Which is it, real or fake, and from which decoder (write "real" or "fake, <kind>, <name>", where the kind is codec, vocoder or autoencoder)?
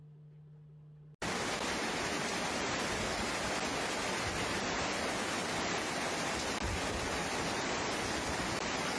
real